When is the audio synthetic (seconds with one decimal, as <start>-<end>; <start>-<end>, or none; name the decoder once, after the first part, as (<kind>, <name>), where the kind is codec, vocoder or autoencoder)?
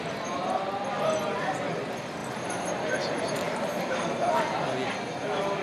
2.2-4.4 (vocoder, BigVGAN v2)